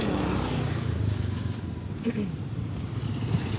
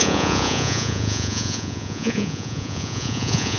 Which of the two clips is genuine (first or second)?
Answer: first